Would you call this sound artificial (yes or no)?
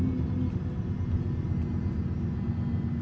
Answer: no